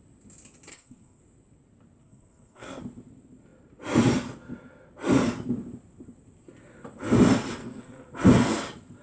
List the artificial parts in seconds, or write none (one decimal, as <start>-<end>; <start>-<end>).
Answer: 0.7-1.2; 2.0-2.8; 7.6-8.1

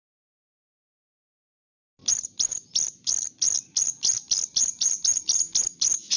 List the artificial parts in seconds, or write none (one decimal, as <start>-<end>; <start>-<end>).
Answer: none

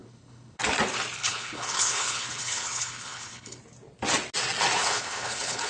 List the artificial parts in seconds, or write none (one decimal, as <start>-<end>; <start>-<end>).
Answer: 0.0-0.6; 1.2-3.6; 4.8-5.7

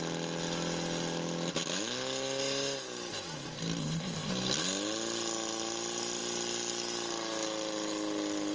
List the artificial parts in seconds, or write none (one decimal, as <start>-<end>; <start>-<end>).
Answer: 3.8-4.3

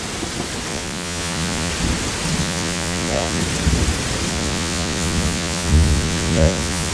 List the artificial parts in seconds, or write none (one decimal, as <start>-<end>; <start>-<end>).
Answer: 0.7-1.7; 2.4-3.4; 4.3-6.9

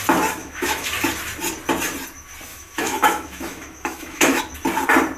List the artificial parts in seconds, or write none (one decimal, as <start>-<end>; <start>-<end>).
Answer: 0.4-0.9; 2.5-4.4